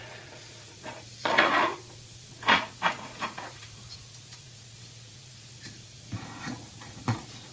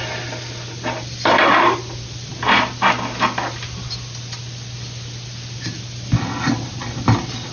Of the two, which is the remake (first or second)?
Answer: first